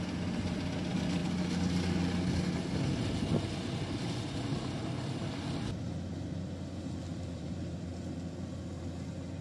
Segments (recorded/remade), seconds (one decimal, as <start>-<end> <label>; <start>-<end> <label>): 0.0-7.1 recorded; 7.1-7.9 remade; 7.9-9.4 recorded